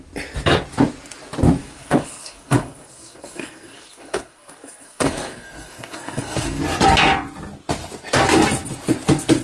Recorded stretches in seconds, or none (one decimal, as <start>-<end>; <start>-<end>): 0.0-1.6; 6.6-9.4